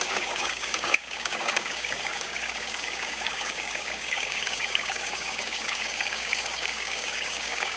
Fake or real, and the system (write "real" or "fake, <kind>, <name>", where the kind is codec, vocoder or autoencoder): fake, codec, DAC